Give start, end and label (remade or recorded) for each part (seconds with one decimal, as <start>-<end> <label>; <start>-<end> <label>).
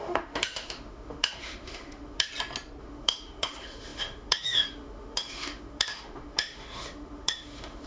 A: 0.0-2.3 remade; 2.3-2.8 recorded; 2.8-7.9 remade